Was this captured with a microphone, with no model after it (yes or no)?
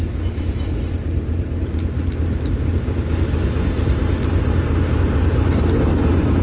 yes